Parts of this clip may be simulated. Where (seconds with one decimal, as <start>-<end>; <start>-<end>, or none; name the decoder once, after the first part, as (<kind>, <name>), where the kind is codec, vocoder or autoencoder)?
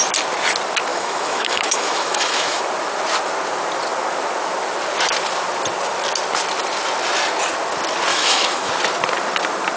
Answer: 0.9-2.6 (autoencoder, DAC-VAE); 8.1-8.7